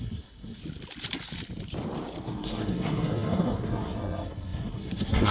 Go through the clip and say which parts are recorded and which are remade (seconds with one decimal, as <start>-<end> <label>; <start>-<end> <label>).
0.0-0.6 remade; 0.6-2.2 recorded; 2.2-5.3 remade

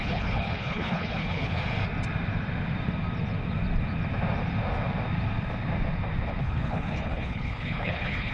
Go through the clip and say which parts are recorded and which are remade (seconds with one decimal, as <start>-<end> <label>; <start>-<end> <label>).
0.0-1.6 remade; 1.6-6.4 recorded; 6.4-8.3 remade

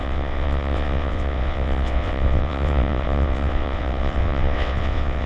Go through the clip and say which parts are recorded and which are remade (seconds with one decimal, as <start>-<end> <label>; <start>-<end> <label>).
0.0-5.3 remade

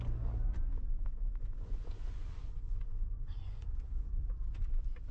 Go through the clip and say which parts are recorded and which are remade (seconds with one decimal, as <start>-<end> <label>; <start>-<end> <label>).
0.0-1.2 recorded; 1.2-4.1 remade; 4.1-5.1 recorded